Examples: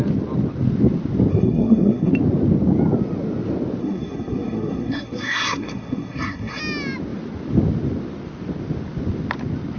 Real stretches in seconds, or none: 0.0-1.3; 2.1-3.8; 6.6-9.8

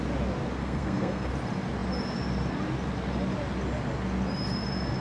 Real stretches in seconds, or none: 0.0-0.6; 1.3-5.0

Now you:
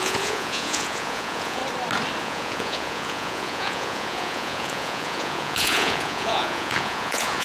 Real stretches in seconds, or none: 1.6-2.2